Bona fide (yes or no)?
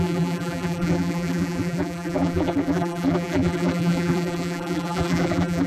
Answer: no